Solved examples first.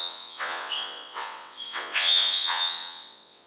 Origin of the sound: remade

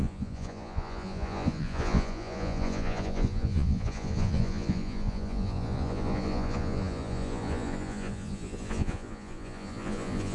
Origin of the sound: remade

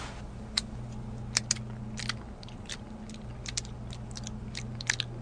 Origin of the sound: recorded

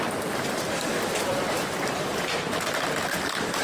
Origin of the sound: remade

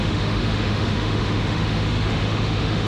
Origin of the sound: remade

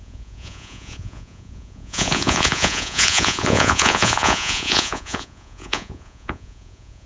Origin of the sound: remade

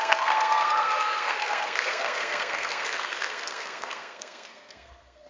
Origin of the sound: remade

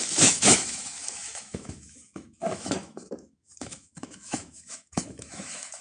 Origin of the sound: remade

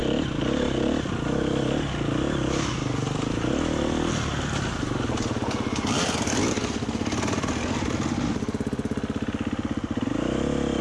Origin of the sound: recorded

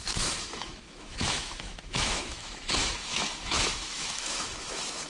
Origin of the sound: remade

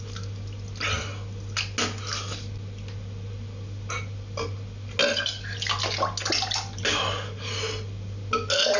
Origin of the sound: recorded